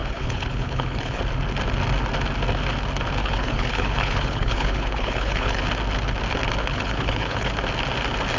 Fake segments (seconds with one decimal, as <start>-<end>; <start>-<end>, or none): 0.0-1.2; 3.2-5.6; 6.6-7.5